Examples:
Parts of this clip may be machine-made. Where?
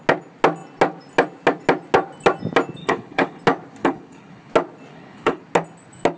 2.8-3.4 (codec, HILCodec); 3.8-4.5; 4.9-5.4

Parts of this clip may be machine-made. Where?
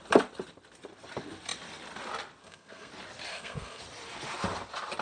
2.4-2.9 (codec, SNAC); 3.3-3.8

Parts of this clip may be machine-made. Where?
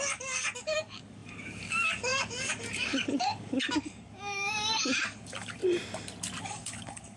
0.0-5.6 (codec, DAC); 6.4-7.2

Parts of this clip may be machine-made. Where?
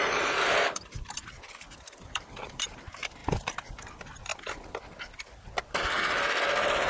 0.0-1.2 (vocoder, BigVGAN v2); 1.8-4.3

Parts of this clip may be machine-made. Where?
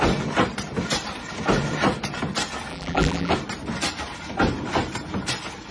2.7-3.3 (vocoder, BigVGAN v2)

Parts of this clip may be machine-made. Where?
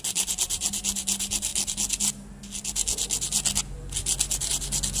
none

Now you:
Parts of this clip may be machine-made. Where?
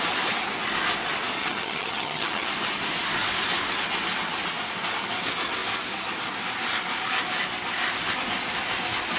1.4-2.5 (vocoder, HiFi-GAN)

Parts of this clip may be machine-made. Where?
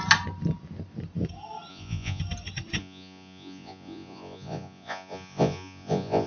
1.7-2.2 (vocoder, Vocos); 2.8-6.3